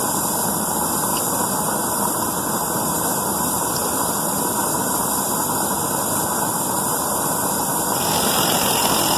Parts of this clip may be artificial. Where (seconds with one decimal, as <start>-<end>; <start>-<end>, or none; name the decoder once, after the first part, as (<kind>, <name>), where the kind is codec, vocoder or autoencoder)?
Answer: none